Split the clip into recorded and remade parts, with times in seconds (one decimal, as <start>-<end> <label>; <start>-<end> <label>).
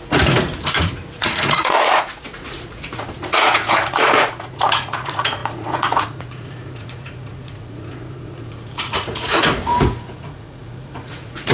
0.0-11.5 remade